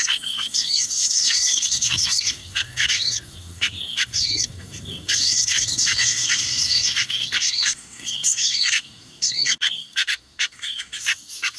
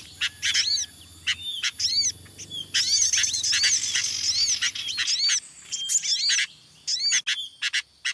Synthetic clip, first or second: first